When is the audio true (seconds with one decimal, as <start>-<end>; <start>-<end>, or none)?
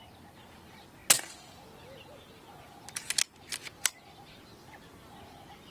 0.0-5.7